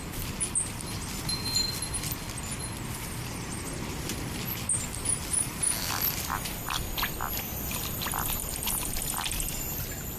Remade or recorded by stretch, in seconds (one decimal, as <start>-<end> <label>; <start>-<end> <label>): 0.0-8.4 recorded; 8.4-9.6 remade; 9.6-10.2 recorded